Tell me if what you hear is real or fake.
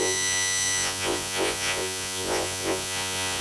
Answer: fake